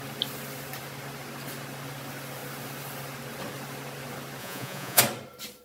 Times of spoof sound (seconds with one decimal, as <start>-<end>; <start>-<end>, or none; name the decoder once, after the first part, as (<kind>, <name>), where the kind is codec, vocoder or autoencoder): 4.4-5.0 (vocoder, Vocos)